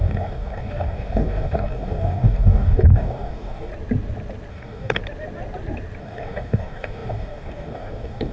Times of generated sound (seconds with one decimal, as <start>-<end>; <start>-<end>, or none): 0.0-3.7; 4.5-5.0; 6.0-8.3